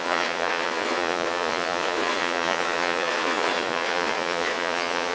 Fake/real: fake